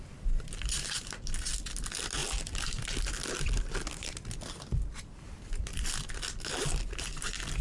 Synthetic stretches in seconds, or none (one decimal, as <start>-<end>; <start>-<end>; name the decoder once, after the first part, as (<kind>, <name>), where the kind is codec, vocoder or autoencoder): none